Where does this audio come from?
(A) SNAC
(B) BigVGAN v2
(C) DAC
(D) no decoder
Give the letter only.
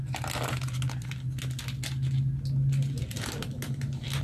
D